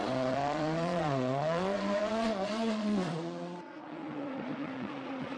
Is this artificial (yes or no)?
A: yes